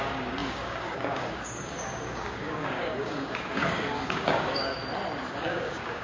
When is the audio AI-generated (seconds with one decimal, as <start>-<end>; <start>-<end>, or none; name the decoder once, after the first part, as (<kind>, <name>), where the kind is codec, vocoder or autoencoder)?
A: 0.0-4.7 (codec, DAC); 5.3-6.0